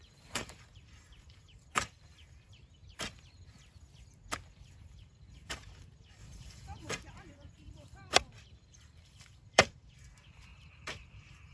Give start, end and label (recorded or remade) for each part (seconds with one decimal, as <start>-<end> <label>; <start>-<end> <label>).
0.0-2.8 remade; 2.8-4.8 recorded; 4.8-11.5 remade

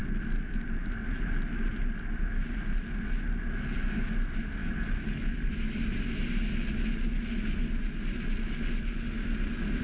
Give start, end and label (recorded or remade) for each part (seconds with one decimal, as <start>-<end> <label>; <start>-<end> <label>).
0.0-9.8 recorded

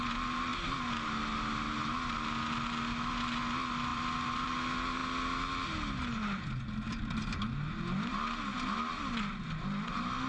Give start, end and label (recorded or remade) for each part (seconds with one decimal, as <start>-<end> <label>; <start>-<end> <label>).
0.0-3.9 recorded; 3.9-4.5 remade; 4.5-10.3 recorded

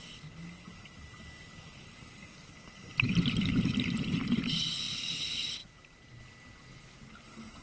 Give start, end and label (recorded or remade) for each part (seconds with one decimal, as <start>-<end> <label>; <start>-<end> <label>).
0.0-5.6 recorded; 5.6-6.2 remade; 6.2-7.6 recorded

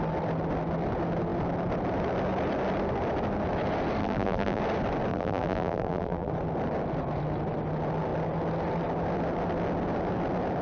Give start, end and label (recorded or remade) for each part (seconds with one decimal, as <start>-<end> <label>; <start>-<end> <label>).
0.0-4.0 recorded; 4.0-4.6 remade; 4.6-5.1 recorded; 5.1-6.3 remade; 6.3-10.6 recorded